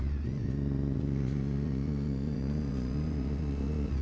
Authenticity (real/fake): fake